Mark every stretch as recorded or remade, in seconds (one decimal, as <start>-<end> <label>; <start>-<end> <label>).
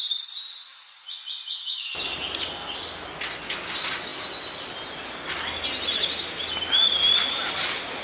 0.0-8.0 recorded